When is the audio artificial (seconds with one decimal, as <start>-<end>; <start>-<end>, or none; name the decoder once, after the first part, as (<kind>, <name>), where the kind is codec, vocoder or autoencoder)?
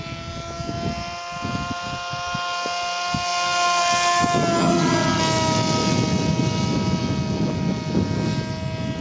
4.6-5.2 (vocoder, HiFi-GAN)